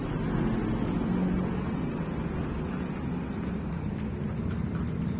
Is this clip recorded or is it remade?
recorded